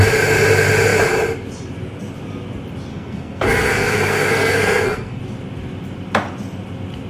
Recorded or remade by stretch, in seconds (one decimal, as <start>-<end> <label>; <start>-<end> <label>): 0.0-2.9 recorded; 2.9-5.2 remade; 5.2-7.1 recorded